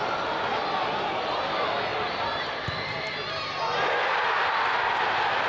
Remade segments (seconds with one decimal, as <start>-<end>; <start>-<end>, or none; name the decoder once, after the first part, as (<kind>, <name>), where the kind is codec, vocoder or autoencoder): none